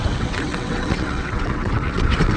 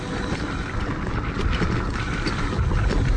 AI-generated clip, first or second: first